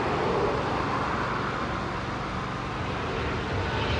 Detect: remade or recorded recorded